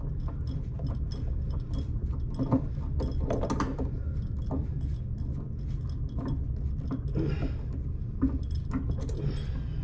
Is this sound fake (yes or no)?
no